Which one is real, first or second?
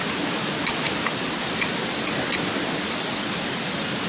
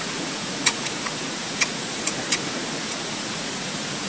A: first